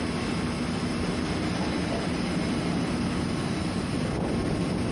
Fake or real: real